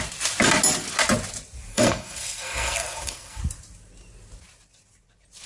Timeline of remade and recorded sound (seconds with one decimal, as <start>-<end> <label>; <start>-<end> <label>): 0.0-1.7 recorded; 1.7-3.4 remade; 3.4-5.5 recorded